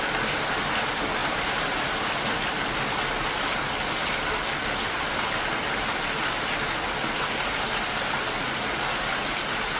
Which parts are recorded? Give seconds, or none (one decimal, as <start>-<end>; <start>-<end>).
0.0-1.2; 2.7-4.6; 5.1-9.8